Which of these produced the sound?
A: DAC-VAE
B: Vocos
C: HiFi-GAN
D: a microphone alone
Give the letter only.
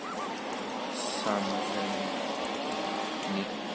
D